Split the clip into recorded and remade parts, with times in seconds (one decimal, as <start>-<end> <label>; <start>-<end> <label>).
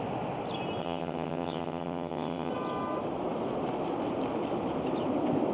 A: 0.0-0.8 recorded; 0.8-2.5 remade; 2.5-5.5 recorded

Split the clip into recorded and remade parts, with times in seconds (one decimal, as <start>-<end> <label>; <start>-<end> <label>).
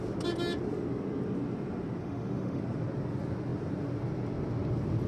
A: 0.0-2.0 recorded; 2.0-2.6 remade; 2.6-5.1 recorded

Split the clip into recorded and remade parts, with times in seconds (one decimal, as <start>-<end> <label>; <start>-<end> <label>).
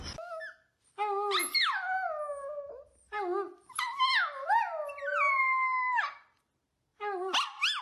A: 0.0-7.8 recorded